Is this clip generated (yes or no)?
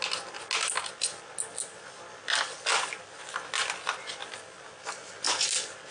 no